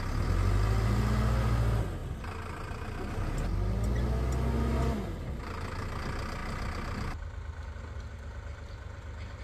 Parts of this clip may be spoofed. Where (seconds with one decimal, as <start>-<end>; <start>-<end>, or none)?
none

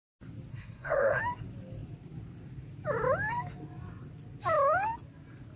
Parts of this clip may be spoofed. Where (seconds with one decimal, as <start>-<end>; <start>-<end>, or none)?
0.5-1.2

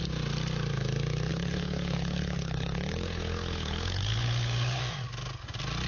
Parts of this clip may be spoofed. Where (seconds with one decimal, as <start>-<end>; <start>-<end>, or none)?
1.3-4.8